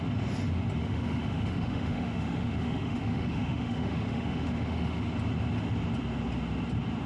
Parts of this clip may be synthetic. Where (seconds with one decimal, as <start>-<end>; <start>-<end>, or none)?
0.8-5.1